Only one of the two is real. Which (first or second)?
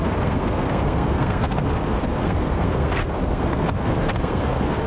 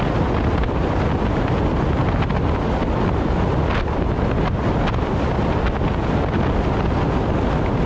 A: second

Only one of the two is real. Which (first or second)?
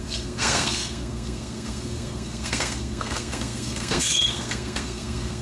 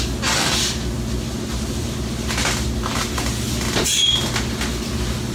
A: second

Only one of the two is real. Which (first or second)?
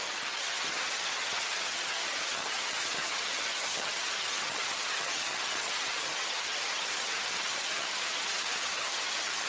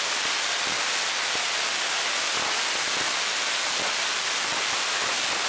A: second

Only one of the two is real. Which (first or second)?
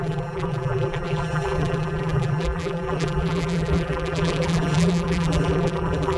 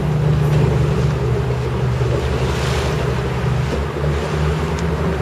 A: second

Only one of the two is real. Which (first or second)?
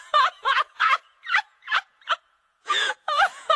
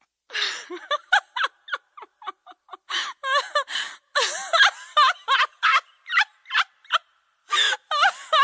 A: second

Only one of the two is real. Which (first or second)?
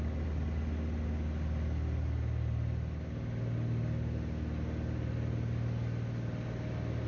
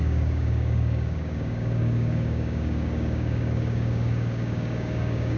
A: first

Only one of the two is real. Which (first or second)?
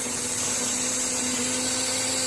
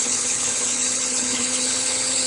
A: first